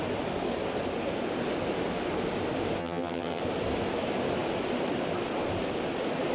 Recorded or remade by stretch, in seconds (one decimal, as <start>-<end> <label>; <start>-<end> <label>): 0.0-2.8 recorded; 2.8-3.4 remade; 3.4-6.3 recorded